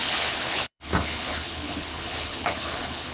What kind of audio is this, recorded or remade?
remade